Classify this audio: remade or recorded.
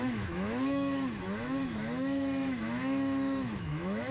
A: remade